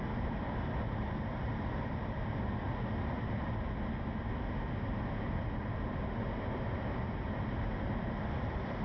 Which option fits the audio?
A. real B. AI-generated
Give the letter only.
A